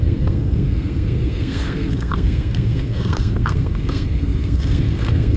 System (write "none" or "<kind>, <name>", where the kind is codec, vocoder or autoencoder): codec, SNAC